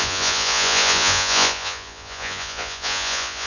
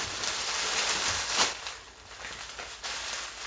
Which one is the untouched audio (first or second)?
second